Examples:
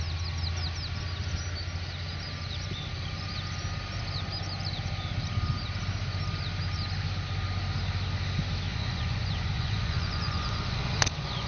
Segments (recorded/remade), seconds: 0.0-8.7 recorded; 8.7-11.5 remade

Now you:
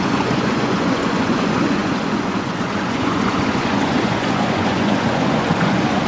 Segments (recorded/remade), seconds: 0.0-6.1 remade

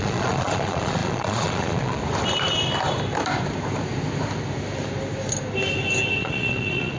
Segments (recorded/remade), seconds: 0.0-2.0 remade; 2.0-6.2 recorded; 6.2-7.0 remade

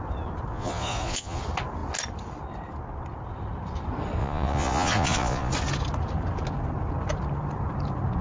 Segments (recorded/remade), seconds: 0.0-0.5 recorded; 0.5-1.4 remade; 1.4-4.2 recorded; 4.2-5.5 remade; 5.5-8.2 recorded

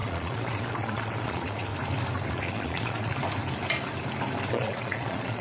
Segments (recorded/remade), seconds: 0.0-1.7 remade; 1.7-2.3 recorded; 2.3-3.1 remade; 3.1-4.5 recorded; 4.5-5.4 remade